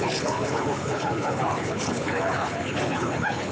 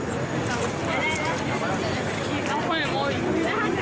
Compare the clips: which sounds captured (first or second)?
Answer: second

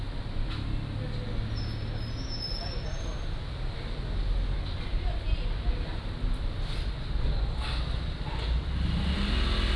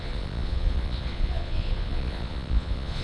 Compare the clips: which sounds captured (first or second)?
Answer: first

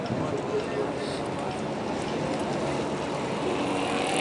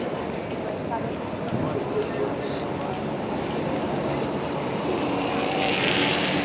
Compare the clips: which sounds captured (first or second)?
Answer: first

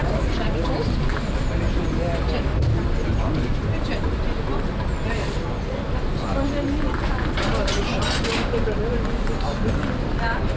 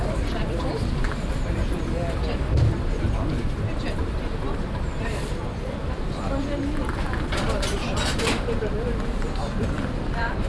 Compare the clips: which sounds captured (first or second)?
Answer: first